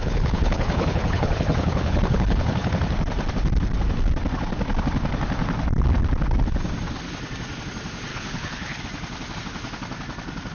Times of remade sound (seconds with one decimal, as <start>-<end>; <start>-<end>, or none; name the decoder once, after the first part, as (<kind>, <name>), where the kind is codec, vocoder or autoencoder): 0.0-2.7 (codec, HILCodec); 8.1-8.8